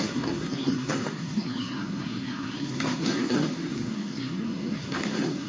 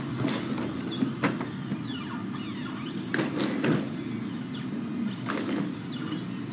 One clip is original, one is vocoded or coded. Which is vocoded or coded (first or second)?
first